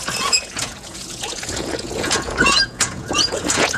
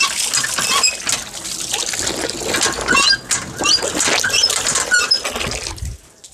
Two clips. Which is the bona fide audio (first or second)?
second